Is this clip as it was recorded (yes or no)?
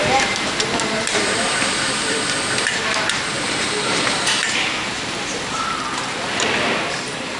no